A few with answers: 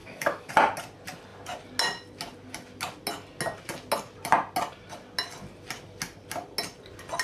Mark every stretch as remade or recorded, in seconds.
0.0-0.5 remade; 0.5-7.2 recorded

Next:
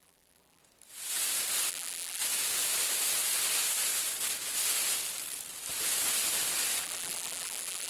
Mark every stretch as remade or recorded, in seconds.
0.0-0.6 remade; 0.6-1.7 recorded; 1.7-2.2 remade; 2.2-6.8 recorded; 6.8-7.9 remade

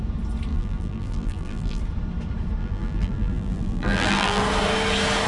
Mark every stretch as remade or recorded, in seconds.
0.0-0.5 recorded; 0.5-1.8 remade; 1.8-2.6 recorded; 2.6-4.4 remade; 4.4-5.3 recorded

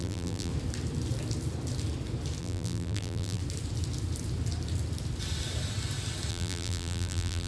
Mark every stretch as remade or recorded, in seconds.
0.0-0.5 remade; 0.5-2.4 recorded; 2.4-3.4 remade; 3.4-6.3 recorded; 6.3-7.5 remade